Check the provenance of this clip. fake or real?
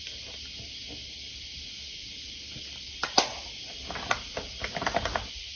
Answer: real